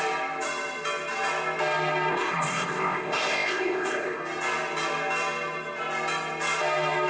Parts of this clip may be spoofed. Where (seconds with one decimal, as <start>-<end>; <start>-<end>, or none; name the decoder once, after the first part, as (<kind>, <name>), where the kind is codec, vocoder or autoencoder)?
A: 2.1-4.2 (codec, ZipCodec)